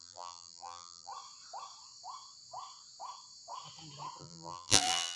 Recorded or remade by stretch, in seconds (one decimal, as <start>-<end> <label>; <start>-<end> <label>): 0.0-1.1 remade; 1.1-4.2 recorded; 4.2-5.2 remade